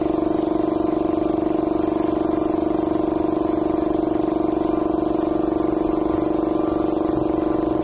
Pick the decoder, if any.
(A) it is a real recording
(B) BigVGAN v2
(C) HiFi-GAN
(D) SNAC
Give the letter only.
A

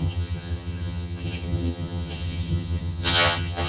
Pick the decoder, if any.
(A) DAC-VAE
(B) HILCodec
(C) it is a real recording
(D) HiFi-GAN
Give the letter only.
D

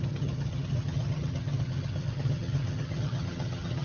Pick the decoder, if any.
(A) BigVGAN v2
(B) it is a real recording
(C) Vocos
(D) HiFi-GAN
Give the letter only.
D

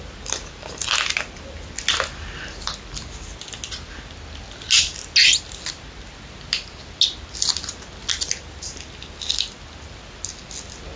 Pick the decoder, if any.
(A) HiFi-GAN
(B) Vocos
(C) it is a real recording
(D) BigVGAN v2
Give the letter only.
C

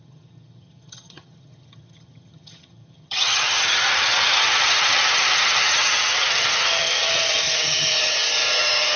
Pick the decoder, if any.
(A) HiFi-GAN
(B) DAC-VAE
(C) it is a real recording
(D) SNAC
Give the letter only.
A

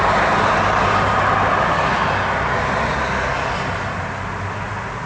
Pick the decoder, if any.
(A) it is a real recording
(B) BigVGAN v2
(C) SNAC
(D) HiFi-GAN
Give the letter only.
A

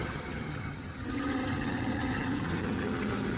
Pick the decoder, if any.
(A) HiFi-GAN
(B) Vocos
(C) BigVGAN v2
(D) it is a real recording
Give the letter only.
A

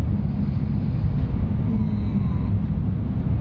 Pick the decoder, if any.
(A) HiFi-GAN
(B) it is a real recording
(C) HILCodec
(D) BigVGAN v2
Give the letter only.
B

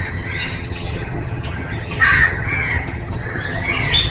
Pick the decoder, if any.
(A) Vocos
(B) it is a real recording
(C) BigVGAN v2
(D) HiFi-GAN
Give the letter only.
D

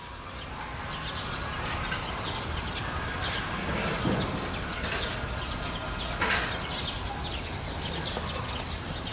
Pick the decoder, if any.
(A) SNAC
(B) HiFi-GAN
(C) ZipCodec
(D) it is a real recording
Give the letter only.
D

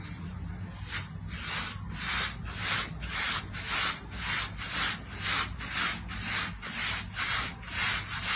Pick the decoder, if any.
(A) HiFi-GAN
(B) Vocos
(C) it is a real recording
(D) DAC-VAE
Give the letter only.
C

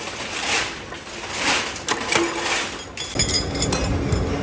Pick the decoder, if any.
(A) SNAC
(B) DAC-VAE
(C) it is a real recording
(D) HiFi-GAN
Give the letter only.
C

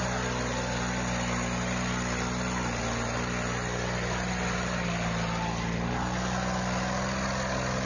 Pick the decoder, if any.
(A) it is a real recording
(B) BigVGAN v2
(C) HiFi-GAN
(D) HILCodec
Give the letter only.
A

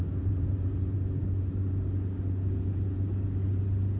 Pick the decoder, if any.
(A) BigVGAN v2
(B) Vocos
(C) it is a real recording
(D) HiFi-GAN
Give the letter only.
C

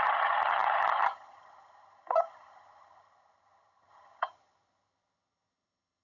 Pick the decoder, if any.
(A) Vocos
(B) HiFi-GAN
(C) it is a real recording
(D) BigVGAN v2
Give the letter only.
B